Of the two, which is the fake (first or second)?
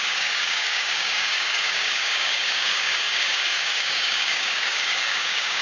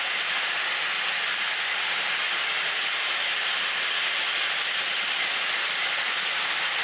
first